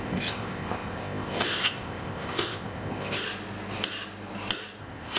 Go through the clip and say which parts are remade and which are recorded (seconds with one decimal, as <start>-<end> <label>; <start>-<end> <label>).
0.0-3.2 remade; 3.2-4.8 recorded; 4.8-5.2 remade